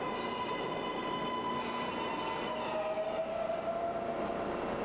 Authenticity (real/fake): real